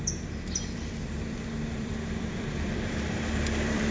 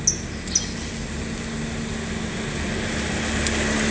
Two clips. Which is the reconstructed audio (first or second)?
first